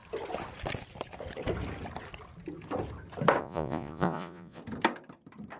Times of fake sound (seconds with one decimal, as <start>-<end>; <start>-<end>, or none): 3.4-4.6